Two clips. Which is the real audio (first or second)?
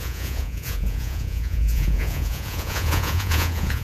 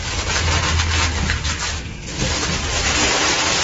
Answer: second